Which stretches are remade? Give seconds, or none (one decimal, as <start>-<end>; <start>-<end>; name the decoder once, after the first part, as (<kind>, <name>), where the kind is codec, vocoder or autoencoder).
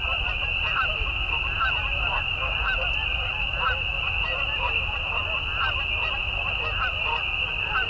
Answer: none